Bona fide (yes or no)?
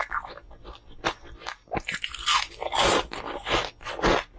yes